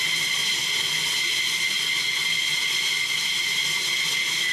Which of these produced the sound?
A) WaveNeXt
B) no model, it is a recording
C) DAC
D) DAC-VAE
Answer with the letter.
B